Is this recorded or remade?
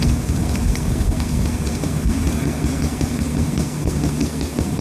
remade